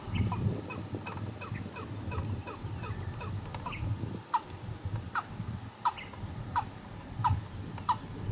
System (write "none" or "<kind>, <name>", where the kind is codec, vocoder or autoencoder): none